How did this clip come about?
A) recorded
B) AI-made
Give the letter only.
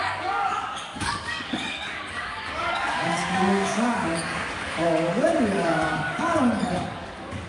B